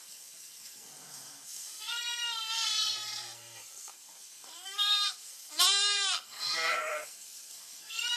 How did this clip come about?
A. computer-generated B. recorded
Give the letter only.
A